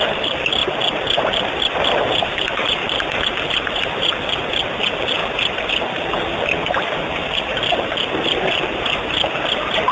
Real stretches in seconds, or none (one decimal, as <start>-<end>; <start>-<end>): 0.0-9.9